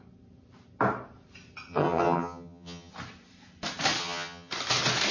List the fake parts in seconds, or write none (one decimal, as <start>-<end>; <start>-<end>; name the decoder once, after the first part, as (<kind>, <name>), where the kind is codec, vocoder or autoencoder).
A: 1.7-2.9 (vocoder, HiFi-GAN); 4.0-4.5